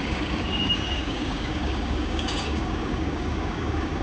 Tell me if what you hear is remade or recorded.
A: remade